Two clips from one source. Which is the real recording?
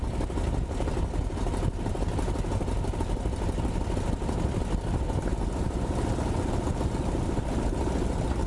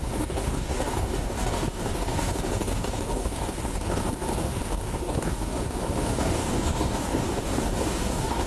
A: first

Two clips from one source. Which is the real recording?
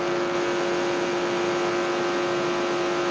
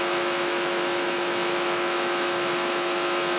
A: first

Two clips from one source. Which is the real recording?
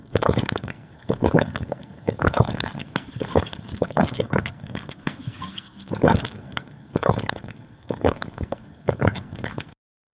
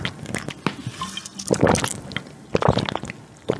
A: second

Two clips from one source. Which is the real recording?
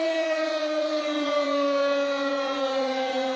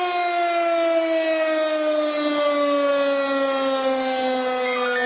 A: second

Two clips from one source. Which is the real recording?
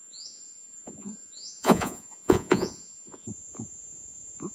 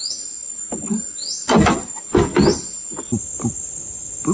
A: second